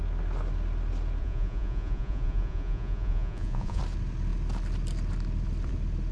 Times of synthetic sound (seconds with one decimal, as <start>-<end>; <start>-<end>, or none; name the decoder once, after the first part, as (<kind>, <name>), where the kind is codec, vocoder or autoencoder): 1.2-3.8 (vocoder, Vocos)